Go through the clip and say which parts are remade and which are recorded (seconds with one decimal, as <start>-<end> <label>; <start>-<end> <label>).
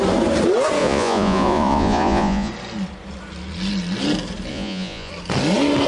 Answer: 0.0-0.8 recorded; 0.8-2.5 remade; 2.5-4.5 recorded; 4.5-5.1 remade; 5.1-5.9 recorded